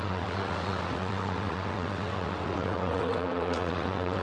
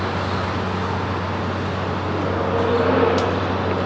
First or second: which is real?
second